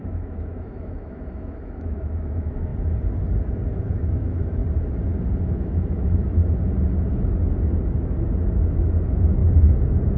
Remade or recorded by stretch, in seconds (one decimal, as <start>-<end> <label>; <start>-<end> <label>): 0.0-2.7 remade; 2.7-3.7 recorded; 3.7-4.6 remade; 4.6-5.4 recorded; 5.4-6.4 remade; 6.4-8.6 recorded; 8.6-9.4 remade; 9.4-10.2 recorded